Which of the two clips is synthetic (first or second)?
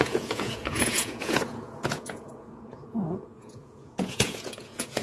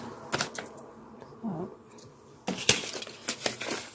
first